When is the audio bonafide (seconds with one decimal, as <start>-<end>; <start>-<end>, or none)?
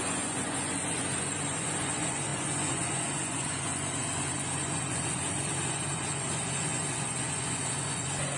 none